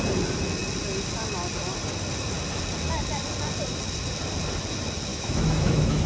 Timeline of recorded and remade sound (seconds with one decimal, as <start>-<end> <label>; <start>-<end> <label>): 0.0-5.1 recorded; 5.1-6.1 remade